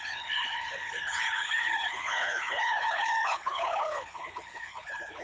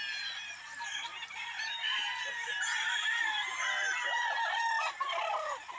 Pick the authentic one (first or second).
second